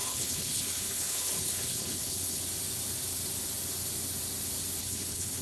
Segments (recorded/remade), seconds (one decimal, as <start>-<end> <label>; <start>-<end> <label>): 0.0-2.4 remade; 2.4-4.8 recorded; 4.8-5.4 remade